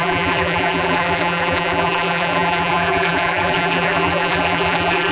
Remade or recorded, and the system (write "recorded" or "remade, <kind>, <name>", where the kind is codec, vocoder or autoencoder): remade, vocoder, BigVGAN v2